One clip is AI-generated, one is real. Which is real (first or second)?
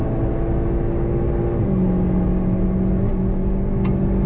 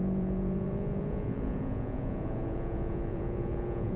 first